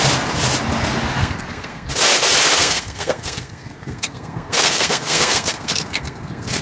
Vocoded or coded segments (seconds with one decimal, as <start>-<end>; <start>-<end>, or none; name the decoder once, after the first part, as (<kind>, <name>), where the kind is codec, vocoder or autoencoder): 1.2-1.9 (codec, SNAC); 2.6-6.6